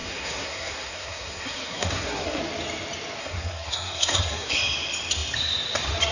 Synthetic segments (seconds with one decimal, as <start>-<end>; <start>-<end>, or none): 0.0-2.4; 3.2-4.6